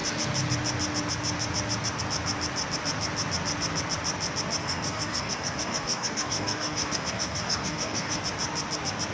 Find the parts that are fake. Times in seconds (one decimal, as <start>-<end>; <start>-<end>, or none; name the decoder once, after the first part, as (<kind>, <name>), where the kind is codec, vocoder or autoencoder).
4.6-8.2 (codec, DAC)